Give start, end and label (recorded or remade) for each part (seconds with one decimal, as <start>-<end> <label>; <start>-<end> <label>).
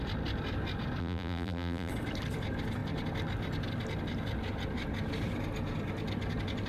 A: 0.0-1.0 recorded; 1.0-1.9 remade; 1.9-6.7 recorded